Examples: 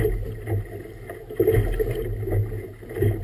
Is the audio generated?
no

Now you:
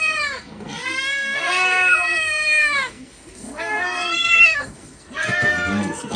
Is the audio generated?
yes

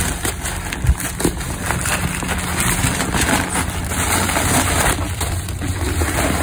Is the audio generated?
no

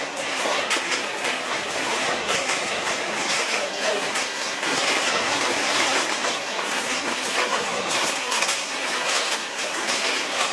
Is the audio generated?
yes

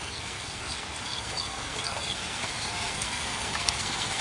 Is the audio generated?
yes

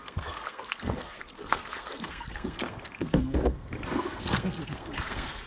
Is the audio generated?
yes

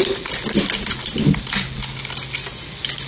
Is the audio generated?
no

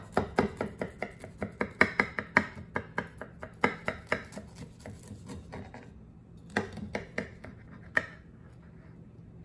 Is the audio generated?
no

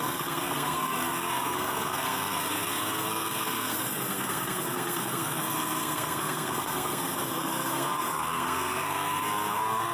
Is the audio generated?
yes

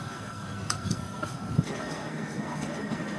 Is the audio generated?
yes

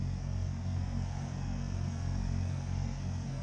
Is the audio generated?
yes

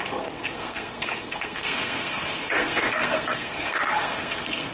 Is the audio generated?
yes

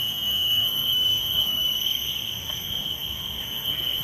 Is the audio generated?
yes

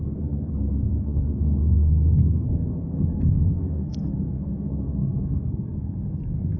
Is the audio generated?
yes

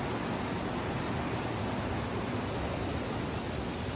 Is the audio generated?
no